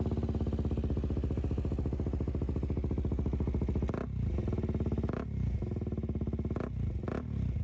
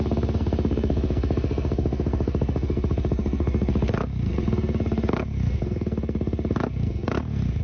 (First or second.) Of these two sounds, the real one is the first